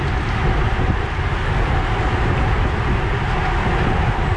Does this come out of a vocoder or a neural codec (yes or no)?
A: no